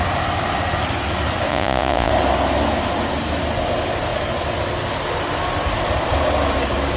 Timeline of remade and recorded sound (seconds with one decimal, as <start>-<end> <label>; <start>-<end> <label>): 0.0-1.5 recorded; 1.5-2.1 remade; 2.1-7.0 recorded